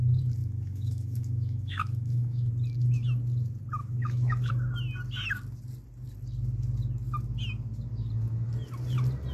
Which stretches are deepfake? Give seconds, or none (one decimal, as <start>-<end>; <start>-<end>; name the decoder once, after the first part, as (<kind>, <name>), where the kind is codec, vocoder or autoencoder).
0.4-2.5 (autoencoder, DAC-VAE); 3.8-4.5